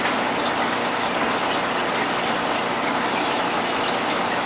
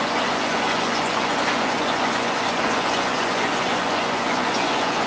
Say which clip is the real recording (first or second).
first